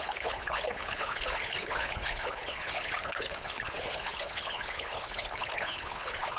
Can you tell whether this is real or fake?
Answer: fake